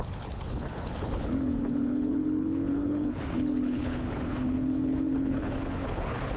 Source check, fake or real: fake